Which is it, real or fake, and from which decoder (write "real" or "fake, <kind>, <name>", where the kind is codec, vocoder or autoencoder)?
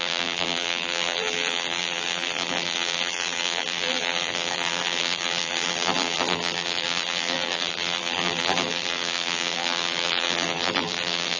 fake, vocoder, BigVGAN v2